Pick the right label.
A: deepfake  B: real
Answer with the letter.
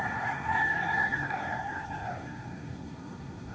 A